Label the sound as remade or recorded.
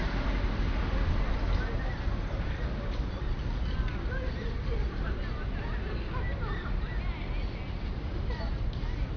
recorded